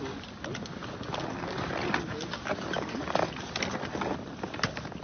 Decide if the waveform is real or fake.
real